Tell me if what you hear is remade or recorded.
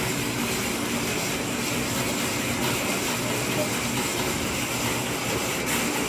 recorded